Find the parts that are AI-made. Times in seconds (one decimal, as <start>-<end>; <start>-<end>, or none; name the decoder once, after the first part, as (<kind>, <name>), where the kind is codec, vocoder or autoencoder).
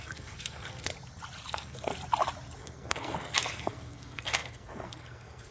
0.0-0.9 (codec, SNAC); 1.5-1.9; 2.6-5.5